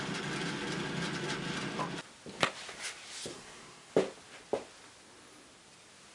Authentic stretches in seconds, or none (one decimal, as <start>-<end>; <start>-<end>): 0.0-3.3; 3.9-6.1